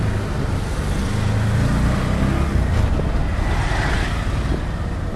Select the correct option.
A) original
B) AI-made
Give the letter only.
A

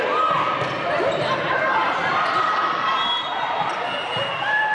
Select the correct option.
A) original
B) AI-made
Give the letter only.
A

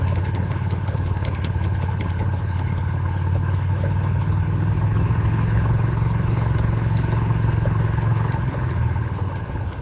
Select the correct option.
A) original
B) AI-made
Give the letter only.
B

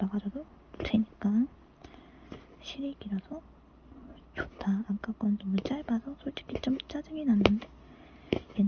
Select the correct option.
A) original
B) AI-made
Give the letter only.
A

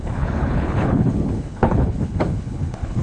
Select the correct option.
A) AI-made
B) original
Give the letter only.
A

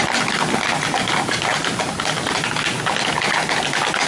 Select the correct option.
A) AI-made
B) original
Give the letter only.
B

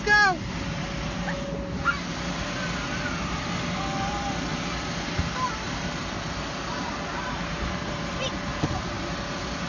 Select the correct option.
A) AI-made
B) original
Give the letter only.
B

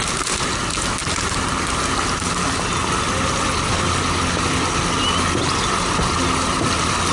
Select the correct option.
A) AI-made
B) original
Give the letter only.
B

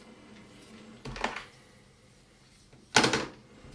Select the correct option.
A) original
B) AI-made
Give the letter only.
A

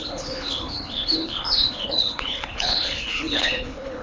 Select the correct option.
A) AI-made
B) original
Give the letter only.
A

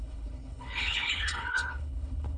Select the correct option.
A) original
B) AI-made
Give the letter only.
B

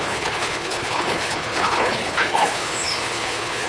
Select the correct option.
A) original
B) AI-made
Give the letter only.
B